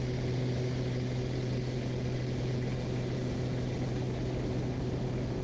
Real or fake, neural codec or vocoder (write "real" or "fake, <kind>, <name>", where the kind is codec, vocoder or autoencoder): real